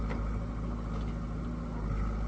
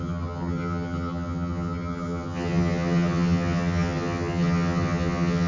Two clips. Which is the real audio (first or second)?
first